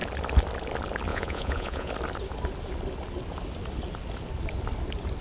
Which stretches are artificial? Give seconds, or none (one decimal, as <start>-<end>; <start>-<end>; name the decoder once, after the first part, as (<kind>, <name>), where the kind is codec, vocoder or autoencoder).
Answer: 1.1-1.9 (vocoder, Vocos)